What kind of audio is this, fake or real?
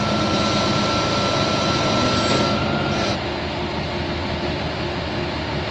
real